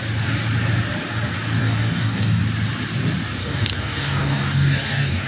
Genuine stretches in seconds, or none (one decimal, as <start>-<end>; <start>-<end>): 0.0-1.6; 2.4-3.4

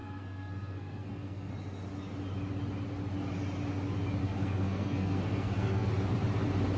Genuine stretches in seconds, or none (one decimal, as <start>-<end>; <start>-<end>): 1.5-4.2; 5.9-6.8

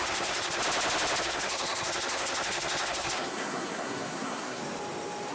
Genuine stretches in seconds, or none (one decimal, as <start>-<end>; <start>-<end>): 0.6-1.2; 4.6-5.3

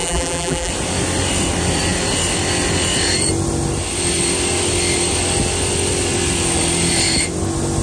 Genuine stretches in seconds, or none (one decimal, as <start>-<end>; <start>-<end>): 0.7-7.8

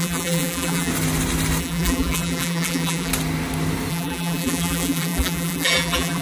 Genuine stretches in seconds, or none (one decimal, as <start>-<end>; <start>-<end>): 0.9-1.6; 3.1-3.9

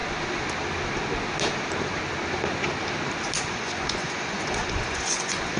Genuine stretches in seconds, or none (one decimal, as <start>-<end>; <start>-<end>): 0.0-3.4